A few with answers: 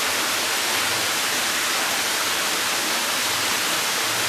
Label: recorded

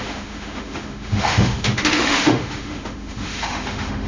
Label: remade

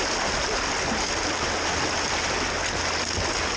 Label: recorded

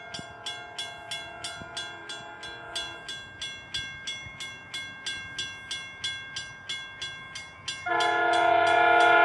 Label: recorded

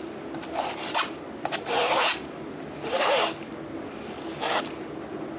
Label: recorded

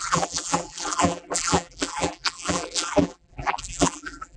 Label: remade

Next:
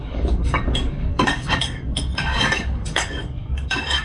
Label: remade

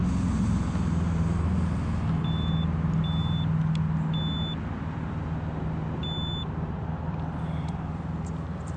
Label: recorded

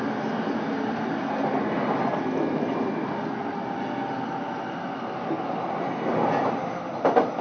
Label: recorded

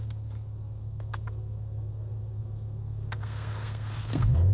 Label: remade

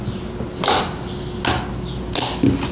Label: recorded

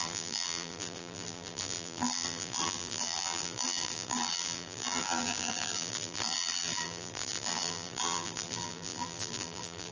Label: remade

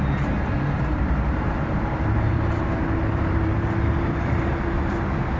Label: remade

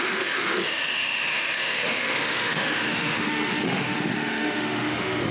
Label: remade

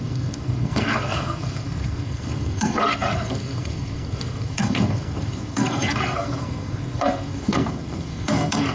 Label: remade